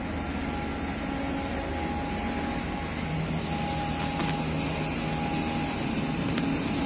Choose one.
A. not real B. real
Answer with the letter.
B